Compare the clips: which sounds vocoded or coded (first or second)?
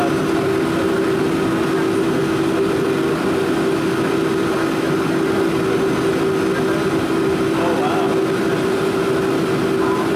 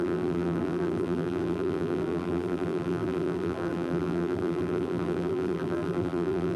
second